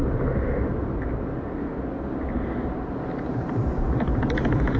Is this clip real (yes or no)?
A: yes